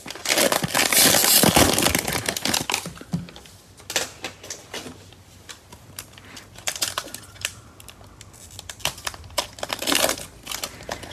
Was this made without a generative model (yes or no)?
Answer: yes